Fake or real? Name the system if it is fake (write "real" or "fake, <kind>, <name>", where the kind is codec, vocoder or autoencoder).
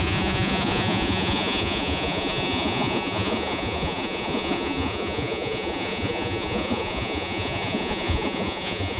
fake, vocoder, Vocos